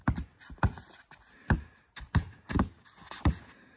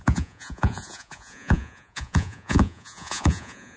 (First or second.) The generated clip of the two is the second